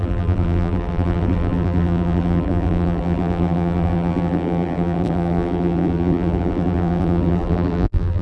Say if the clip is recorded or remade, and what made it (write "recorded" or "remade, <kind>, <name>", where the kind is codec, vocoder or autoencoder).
remade, vocoder, BigVGAN v2